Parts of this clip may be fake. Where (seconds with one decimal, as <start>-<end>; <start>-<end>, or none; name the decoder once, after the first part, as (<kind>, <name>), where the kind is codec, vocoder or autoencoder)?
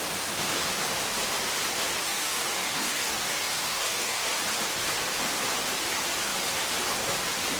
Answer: 2.0-4.4 (codec, DAC)